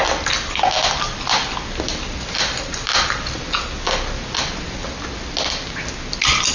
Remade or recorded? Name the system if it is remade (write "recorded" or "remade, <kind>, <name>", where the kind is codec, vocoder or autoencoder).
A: recorded